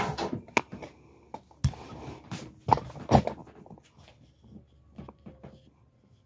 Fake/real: real